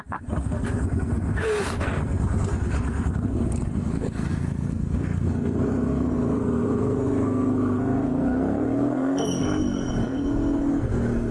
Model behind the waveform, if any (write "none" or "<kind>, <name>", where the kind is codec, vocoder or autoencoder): codec, SNAC